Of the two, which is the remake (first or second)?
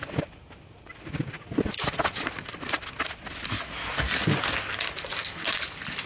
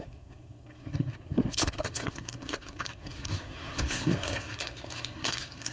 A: second